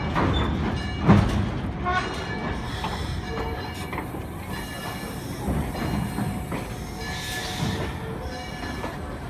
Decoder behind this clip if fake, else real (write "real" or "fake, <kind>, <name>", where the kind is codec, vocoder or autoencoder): real